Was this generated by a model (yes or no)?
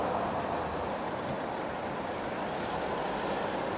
no